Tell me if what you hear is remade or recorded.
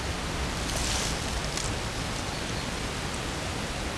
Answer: recorded